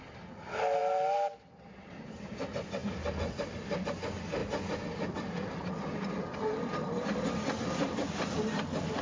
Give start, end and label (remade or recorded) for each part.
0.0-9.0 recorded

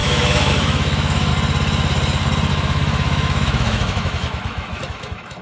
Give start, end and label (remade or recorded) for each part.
0.0-1.3 remade; 1.3-2.5 recorded; 2.5-5.4 remade

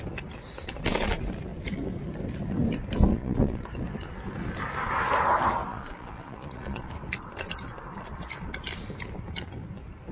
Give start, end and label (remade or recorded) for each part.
0.0-3.1 recorded; 3.1-3.6 remade; 3.6-5.7 recorded; 5.7-6.9 remade; 6.9-10.1 recorded